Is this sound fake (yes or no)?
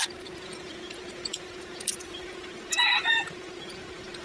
yes